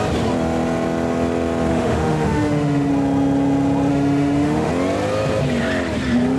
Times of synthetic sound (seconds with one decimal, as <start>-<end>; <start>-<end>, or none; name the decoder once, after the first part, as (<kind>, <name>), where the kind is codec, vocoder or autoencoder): 1.7-2.9 (autoencoder, DAC-VAE); 3.9-4.7